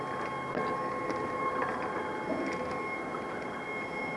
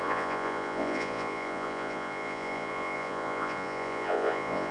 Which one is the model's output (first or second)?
second